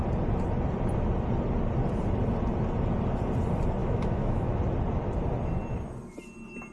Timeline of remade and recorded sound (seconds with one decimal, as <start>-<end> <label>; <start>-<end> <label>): 0.0-3.8 recorded; 3.8-4.6 remade; 4.6-6.7 recorded